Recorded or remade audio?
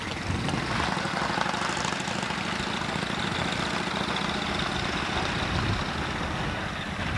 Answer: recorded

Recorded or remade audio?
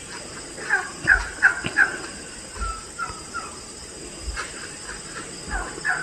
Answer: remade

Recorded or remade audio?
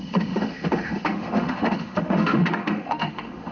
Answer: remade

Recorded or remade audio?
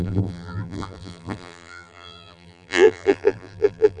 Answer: remade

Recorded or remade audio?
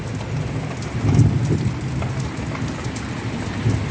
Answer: recorded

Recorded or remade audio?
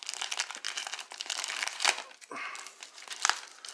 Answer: recorded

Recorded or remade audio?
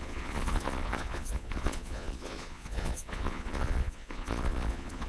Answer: remade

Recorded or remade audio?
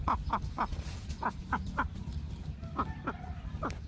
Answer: recorded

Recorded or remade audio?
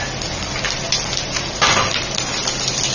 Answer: recorded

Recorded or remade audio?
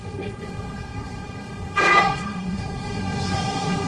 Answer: remade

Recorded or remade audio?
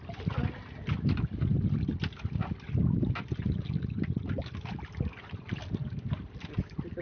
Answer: recorded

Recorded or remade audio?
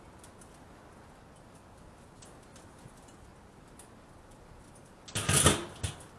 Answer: recorded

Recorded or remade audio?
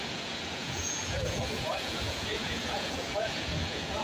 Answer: remade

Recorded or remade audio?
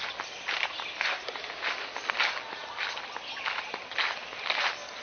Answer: recorded